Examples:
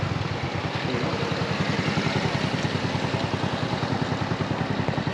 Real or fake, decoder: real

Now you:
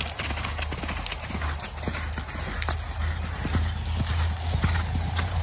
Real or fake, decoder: real